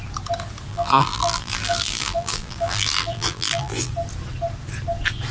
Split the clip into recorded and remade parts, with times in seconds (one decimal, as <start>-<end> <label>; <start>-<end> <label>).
0.0-0.7 recorded; 0.7-3.9 remade; 3.9-5.3 recorded